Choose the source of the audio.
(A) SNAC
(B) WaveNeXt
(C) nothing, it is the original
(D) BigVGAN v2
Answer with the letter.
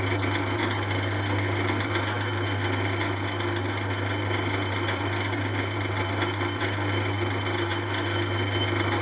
C